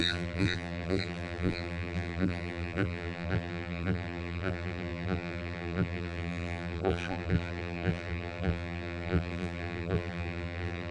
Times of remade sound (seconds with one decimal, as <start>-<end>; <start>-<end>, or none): 0.0-10.9